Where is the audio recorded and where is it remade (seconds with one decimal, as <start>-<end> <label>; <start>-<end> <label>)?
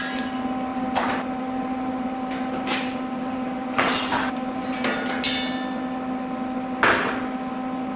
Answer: 0.0-0.7 recorded; 0.7-5.1 remade; 5.1-8.0 recorded